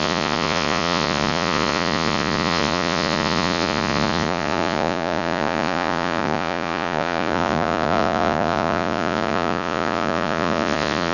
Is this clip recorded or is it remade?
remade